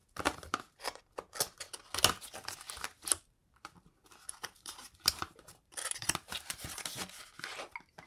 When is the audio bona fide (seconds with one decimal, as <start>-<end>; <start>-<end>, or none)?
1.0-3.4; 6.7-8.1